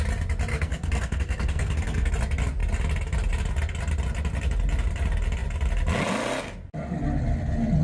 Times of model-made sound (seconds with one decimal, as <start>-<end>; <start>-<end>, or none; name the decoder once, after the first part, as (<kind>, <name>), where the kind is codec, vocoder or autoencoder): 0.5-2.1 (codec, SNAC)